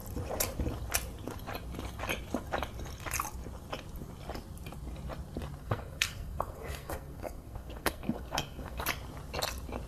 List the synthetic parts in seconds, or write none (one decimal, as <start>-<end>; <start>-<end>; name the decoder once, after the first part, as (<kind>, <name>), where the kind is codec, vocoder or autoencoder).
5.6-8.8 (codec, SNAC)